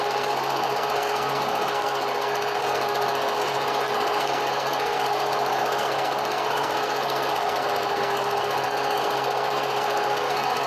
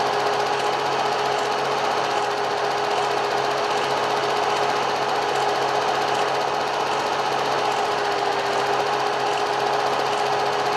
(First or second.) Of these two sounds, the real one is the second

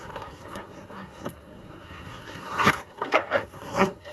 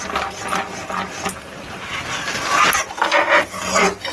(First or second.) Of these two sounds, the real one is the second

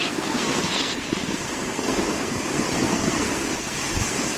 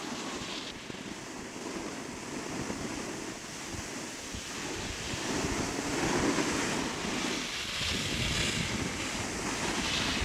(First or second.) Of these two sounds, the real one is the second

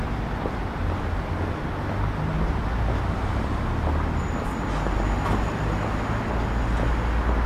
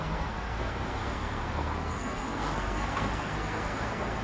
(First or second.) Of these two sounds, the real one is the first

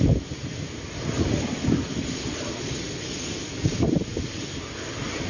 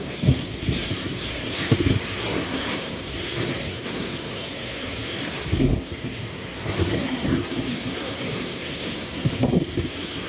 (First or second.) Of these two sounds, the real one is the first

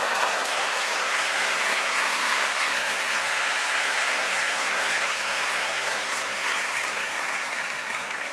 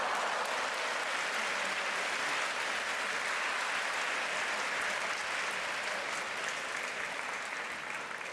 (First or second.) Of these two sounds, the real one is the second